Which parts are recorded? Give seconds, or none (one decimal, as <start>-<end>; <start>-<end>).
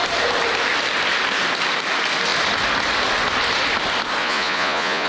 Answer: 0.0-4.2